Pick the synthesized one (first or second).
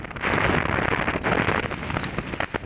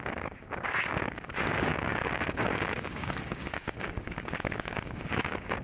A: second